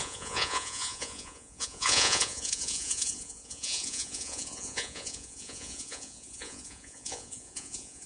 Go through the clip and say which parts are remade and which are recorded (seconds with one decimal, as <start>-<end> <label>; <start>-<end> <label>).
0.0-8.1 remade